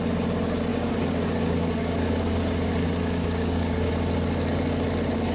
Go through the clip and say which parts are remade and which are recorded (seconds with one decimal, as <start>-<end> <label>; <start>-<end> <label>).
0.0-0.7 recorded; 0.7-3.9 remade; 3.9-5.3 recorded